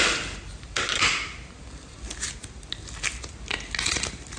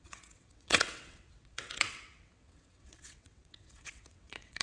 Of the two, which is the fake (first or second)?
second